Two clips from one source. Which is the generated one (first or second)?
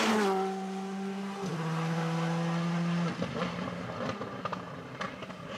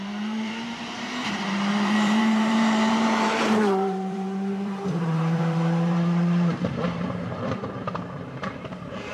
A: second